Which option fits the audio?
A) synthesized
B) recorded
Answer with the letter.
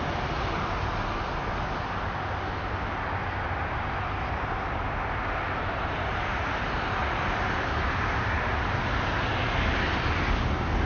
B